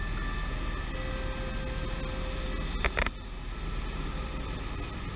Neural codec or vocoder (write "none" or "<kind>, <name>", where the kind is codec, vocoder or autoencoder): none